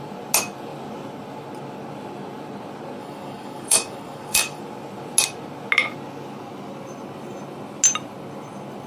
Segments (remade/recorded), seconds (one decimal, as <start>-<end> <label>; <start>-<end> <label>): 0.0-3.0 recorded; 3.0-4.6 remade; 4.6-8.9 recorded